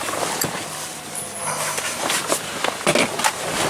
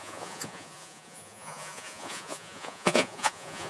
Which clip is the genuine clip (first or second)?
first